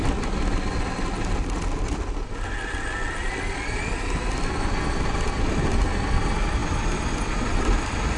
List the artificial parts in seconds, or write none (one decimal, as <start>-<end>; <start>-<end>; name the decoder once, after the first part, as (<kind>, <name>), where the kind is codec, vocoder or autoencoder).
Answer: none